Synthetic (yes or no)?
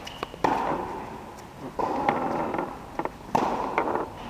no